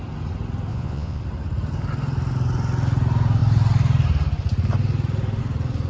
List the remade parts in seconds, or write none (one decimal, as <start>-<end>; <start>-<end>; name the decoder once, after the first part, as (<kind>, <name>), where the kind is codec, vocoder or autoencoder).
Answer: 0.7-1.2 (vocoder, Vocos)